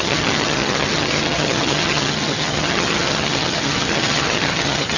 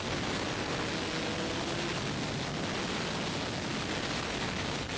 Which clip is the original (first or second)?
second